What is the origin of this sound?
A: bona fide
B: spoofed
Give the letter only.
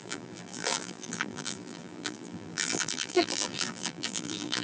B